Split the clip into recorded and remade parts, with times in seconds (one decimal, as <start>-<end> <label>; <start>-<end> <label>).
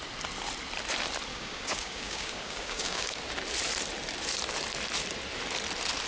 0.0-1.3 recorded; 1.3-3.2 remade; 3.2-6.1 recorded